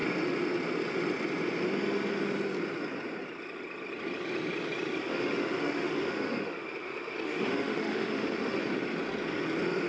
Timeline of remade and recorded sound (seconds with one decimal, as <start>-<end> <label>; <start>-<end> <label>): 0.0-5.0 recorded; 5.0-8.6 remade; 8.6-9.9 recorded